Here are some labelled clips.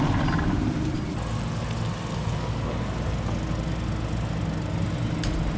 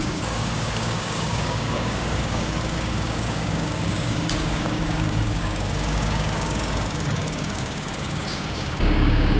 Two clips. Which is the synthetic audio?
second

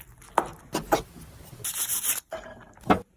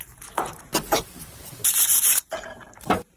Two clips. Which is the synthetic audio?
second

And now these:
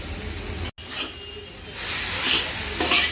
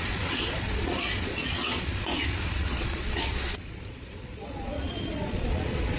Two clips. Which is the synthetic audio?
second